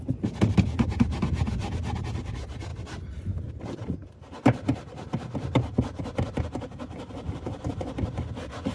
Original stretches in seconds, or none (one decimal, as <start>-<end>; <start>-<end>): 0.0-8.7